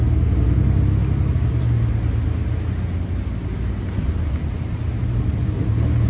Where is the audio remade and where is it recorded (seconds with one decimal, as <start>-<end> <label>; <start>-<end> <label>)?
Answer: 0.0-6.1 recorded